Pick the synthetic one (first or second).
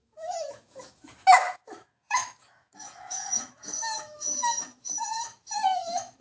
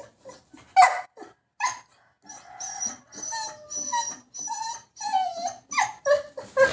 first